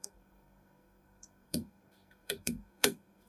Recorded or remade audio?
remade